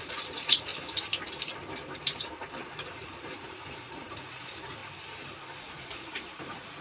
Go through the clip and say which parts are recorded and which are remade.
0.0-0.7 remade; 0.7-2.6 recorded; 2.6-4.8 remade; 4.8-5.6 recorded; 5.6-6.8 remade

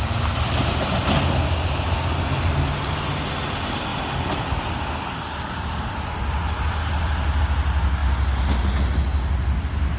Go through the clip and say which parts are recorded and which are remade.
0.0-10.0 recorded

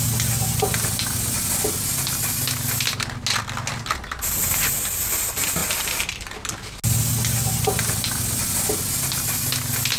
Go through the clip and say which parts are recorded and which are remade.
0.0-10.0 recorded

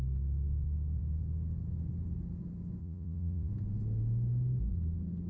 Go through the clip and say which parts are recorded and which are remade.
0.0-2.8 recorded; 2.8-3.5 remade; 3.5-5.3 recorded

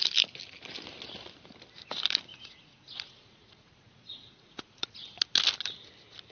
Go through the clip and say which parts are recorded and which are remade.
0.0-2.3 recorded; 2.3-5.2 remade; 5.2-6.3 recorded